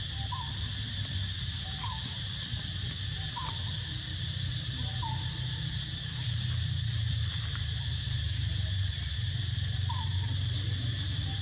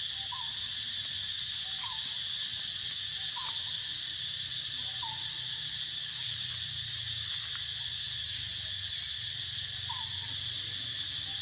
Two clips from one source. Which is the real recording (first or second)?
second